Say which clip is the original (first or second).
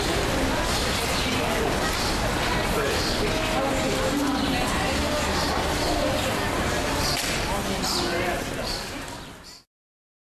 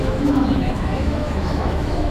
first